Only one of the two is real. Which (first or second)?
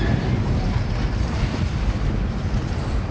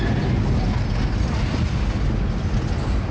second